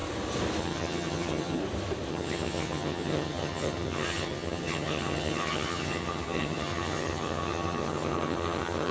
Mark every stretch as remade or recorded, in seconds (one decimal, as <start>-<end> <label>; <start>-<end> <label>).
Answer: 0.0-0.6 recorded; 0.6-1.6 remade; 1.6-2.1 recorded; 2.1-8.9 remade